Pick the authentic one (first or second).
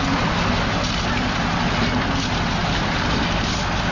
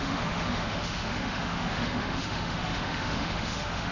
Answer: first